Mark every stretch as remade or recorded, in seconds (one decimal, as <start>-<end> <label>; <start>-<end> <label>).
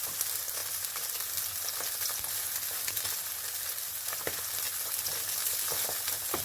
0.0-6.4 recorded